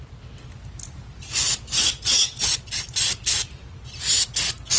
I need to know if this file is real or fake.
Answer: real